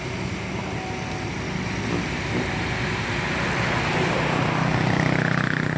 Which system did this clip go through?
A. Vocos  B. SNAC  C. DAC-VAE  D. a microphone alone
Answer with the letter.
D